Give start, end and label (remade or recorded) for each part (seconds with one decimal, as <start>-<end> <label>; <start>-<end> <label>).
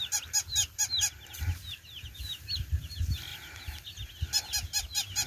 0.0-5.3 recorded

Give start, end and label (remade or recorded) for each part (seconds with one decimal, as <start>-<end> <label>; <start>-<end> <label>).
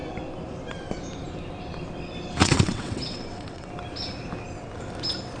0.0-2.4 recorded; 2.4-3.7 remade; 3.7-5.4 recorded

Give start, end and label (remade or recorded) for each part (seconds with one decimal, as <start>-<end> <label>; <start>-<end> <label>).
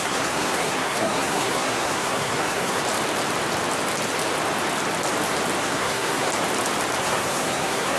0.0-2.8 remade; 2.8-5.6 recorded; 5.6-6.3 remade; 6.3-7.0 recorded; 7.0-8.0 remade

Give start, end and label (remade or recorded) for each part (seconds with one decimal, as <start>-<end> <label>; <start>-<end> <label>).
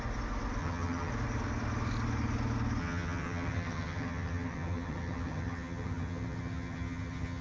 0.0-0.6 recorded; 0.6-1.1 remade; 1.1-2.8 recorded; 2.8-7.4 remade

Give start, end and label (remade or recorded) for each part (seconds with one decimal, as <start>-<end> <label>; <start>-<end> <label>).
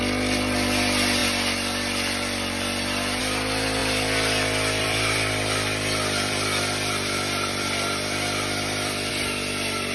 0.0-1.2 recorded; 1.2-3.2 remade; 3.2-3.8 recorded; 3.8-9.1 remade; 9.1-9.9 recorded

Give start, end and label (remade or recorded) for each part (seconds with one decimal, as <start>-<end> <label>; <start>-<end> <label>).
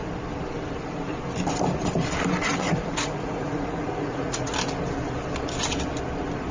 0.0-2.6 recorded; 2.6-4.5 remade; 4.5-6.5 recorded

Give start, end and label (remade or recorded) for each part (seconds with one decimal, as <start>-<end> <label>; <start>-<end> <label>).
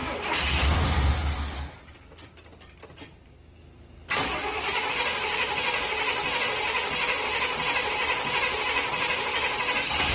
0.0-10.1 recorded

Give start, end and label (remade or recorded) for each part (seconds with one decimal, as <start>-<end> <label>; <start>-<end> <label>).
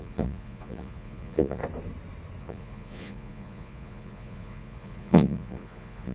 0.0-1.6 remade; 1.6-2.4 recorded; 2.4-6.1 remade